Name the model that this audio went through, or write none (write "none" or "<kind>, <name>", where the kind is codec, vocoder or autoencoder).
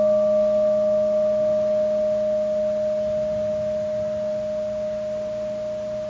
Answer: none